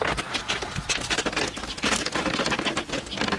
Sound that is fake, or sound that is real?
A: real